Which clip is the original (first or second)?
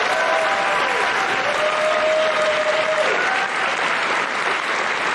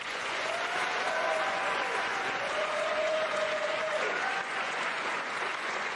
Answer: first